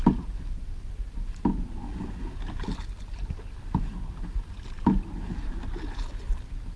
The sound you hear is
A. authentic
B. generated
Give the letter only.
A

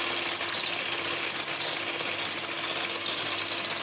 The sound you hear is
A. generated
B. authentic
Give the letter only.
B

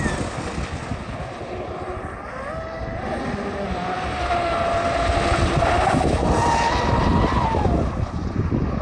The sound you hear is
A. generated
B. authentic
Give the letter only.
B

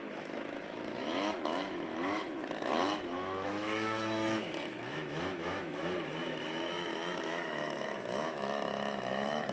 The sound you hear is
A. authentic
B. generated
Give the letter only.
B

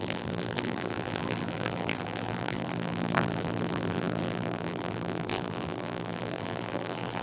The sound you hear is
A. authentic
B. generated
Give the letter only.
B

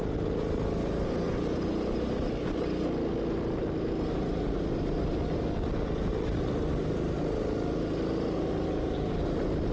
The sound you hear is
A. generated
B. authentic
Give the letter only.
B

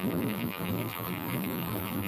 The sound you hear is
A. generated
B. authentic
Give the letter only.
A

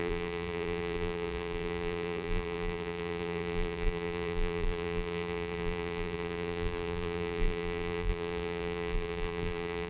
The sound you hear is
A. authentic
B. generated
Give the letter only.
B